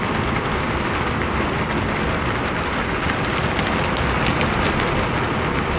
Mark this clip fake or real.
fake